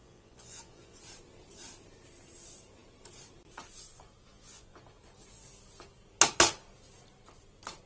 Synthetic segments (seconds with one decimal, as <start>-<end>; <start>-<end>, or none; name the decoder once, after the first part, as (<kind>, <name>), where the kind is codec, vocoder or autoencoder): 0.0-1.0 (vocoder, Vocos); 4.3-4.8